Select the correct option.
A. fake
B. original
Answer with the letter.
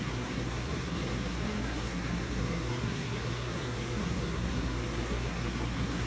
A